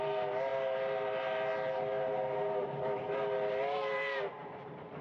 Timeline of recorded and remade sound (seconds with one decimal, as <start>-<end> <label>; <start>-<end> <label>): 0.0-5.0 recorded